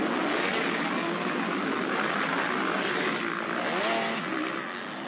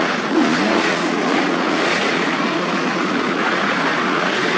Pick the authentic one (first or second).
first